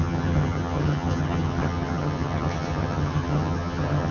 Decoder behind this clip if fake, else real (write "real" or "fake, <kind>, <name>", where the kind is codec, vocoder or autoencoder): fake, vocoder, HiFi-GAN